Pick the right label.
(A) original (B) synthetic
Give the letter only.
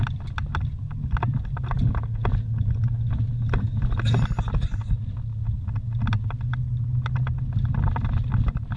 A